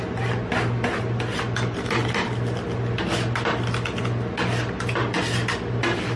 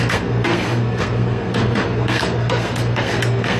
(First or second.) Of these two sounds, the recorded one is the first